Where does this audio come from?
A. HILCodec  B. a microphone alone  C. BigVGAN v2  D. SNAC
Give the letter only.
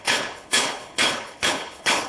A